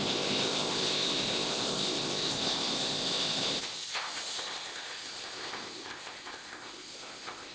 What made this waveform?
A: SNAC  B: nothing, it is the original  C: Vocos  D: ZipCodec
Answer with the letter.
D